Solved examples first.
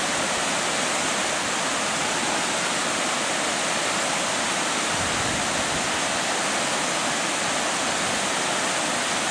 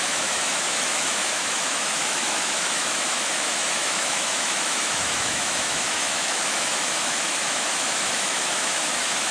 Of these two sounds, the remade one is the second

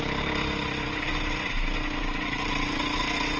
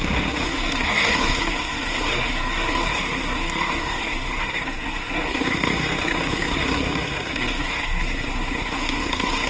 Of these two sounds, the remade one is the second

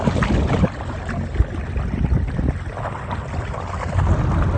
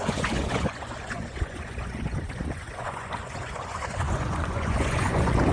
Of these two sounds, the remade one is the second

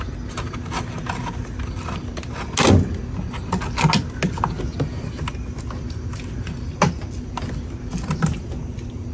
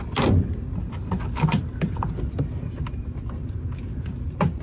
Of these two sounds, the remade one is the second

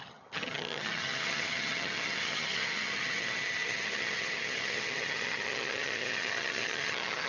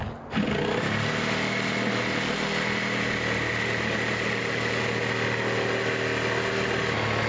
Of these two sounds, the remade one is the first